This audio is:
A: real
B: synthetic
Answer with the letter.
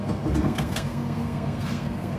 B